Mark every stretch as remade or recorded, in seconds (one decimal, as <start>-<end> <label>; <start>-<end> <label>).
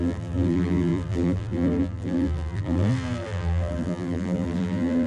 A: 0.0-5.1 remade